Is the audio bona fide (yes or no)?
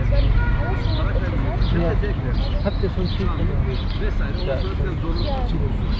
yes